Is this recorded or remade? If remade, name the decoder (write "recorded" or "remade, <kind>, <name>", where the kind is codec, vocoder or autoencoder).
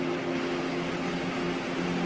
recorded